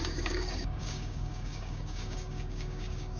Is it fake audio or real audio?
fake